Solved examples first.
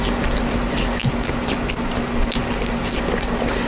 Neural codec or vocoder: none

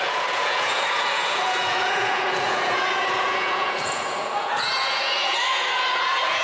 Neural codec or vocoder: vocoder, Vocos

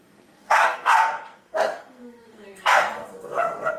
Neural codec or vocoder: codec, SNAC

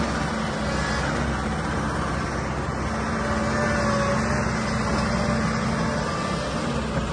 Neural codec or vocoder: none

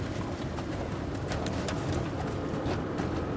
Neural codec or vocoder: none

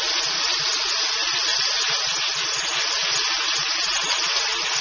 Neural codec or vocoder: vocoder, BigVGAN v2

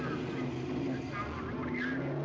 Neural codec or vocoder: none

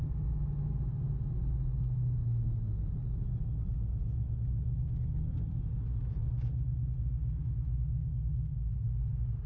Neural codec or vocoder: none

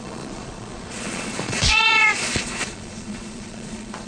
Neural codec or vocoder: vocoder, Vocos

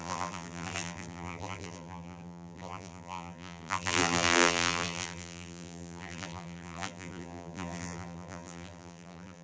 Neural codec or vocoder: vocoder, BigVGAN v2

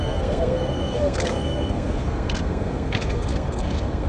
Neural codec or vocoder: codec, SNAC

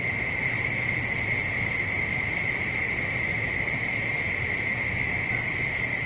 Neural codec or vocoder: none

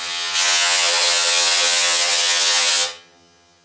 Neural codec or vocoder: vocoder, HiFi-GAN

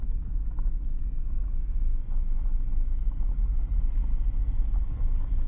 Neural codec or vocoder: none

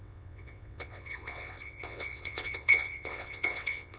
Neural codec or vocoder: vocoder, WaveNeXt